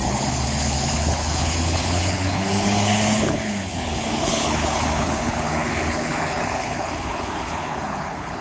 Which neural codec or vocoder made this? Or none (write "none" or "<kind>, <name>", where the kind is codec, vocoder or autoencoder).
codec, HILCodec